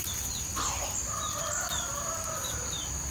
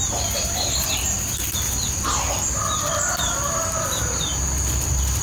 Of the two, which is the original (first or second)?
second